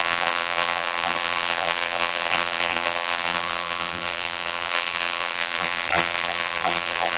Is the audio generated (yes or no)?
yes